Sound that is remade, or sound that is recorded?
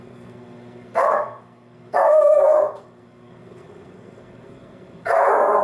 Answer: remade